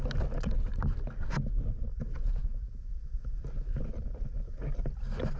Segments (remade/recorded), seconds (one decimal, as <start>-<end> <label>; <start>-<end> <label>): 0.0-1.9 recorded; 1.9-3.4 remade; 3.4-5.4 recorded